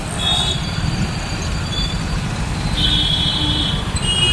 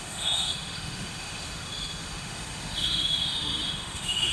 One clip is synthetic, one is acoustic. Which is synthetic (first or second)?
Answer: second